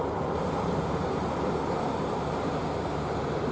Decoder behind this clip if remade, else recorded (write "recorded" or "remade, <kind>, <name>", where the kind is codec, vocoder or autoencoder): recorded